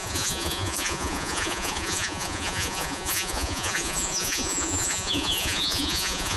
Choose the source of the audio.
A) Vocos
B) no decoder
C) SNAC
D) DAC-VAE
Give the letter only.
A